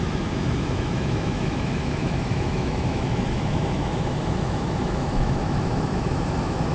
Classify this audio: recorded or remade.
remade